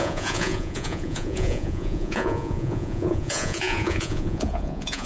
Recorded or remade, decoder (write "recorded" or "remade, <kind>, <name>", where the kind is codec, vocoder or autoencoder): remade, vocoder, Vocos